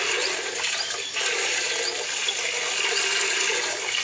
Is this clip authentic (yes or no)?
yes